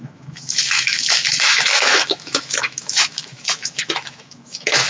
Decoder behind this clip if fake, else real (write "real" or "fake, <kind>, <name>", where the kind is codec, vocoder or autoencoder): fake, autoencoder, DAC-VAE